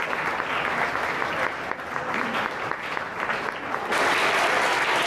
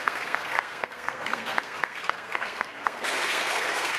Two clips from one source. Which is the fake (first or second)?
second